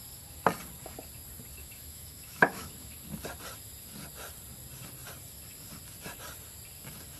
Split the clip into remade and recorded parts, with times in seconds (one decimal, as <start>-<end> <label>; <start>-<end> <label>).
0.0-1.6 recorded; 1.6-3.0 remade; 3.0-7.2 recorded